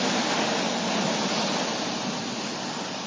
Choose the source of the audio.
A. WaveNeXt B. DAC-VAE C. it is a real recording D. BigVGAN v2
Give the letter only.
C